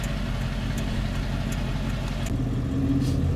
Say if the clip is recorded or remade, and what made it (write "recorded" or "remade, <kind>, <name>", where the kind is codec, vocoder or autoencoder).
recorded